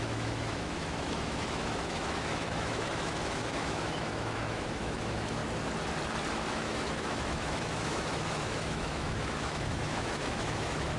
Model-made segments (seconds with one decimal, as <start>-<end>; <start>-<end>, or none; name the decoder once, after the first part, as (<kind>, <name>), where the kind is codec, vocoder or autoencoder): 0.0-5.4 (autoencoder, DAC-VAE); 6.5-11.0